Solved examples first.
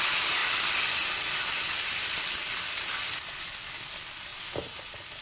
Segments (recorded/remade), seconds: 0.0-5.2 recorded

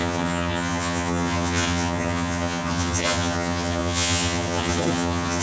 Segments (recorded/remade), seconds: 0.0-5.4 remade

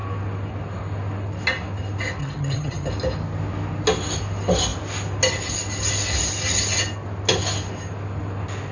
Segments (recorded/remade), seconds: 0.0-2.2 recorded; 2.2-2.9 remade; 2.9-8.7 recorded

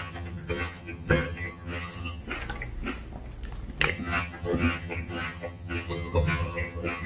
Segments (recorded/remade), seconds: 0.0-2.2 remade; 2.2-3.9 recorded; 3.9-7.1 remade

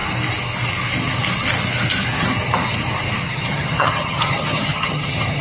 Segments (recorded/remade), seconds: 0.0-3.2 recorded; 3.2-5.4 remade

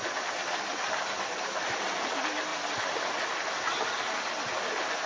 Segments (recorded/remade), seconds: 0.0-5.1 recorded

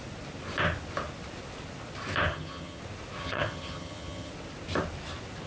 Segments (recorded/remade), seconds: 0.0-2.3 recorded; 2.3-2.8 remade; 2.8-3.2 recorded; 3.2-4.3 remade; 4.3-5.5 recorded